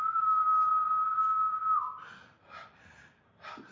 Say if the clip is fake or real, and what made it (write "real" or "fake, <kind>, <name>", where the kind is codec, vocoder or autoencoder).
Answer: real